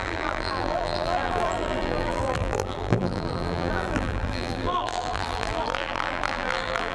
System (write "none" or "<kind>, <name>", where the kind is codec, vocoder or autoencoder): vocoder, BigVGAN v2